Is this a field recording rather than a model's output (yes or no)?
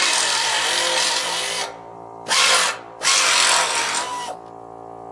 yes